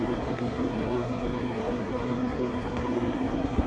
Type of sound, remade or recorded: remade